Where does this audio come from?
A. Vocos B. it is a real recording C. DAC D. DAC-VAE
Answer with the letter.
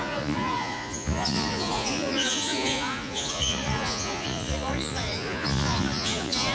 A